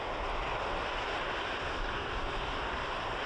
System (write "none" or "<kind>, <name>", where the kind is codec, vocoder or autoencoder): none